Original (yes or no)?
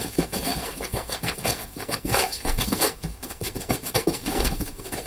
no